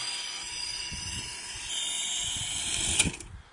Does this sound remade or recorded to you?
recorded